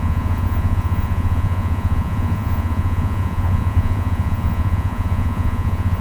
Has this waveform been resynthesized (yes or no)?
yes